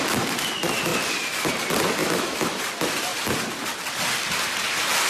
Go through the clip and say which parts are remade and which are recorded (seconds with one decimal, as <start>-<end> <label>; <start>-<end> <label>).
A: 0.0-2.0 recorded; 2.0-2.6 remade; 2.6-5.1 recorded